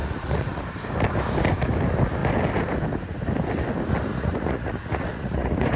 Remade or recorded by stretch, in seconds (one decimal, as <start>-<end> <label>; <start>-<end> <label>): 0.0-0.6 remade; 0.6-4.1 recorded; 4.1-5.8 remade